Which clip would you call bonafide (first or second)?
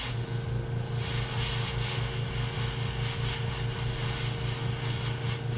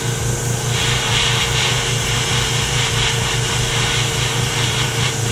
first